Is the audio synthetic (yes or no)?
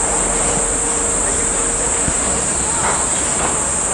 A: no